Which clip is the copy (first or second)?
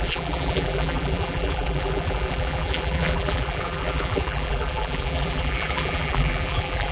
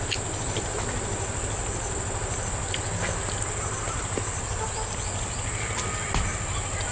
first